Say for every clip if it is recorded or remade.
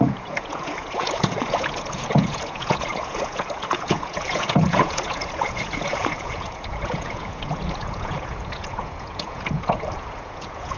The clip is remade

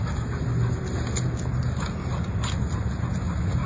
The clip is recorded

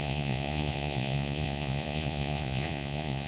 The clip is remade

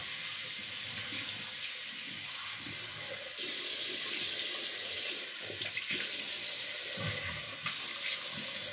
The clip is recorded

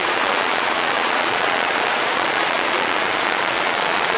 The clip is remade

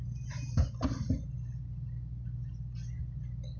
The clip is recorded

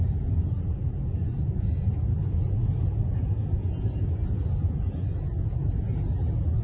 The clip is remade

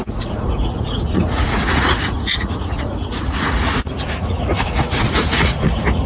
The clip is remade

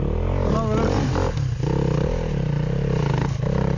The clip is recorded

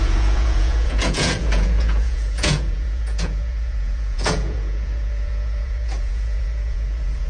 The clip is remade